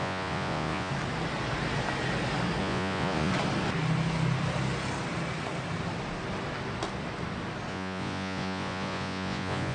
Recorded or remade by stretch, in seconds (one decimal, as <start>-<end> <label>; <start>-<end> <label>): 0.0-0.9 remade; 0.9-2.6 recorded; 2.6-3.3 remade; 3.3-7.7 recorded; 7.7-9.7 remade